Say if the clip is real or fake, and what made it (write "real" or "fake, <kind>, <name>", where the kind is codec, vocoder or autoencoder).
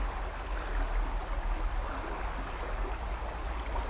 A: real